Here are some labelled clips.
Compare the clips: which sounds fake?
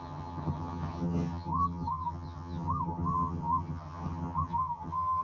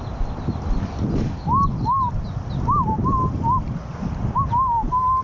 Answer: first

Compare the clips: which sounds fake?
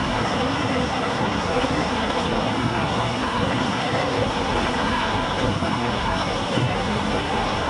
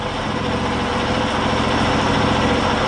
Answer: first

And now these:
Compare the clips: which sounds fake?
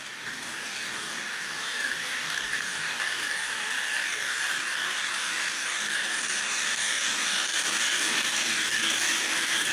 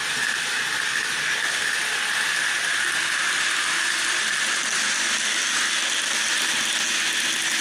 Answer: first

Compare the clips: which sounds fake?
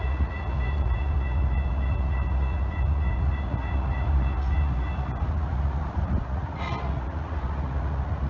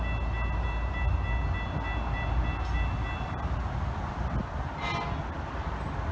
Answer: first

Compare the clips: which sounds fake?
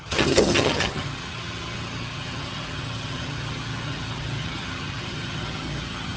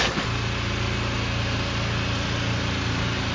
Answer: first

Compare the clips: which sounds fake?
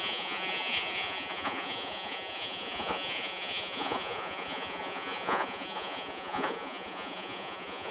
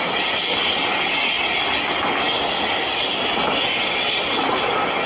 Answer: first